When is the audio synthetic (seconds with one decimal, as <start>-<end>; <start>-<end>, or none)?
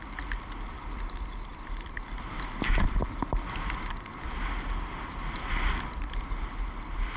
none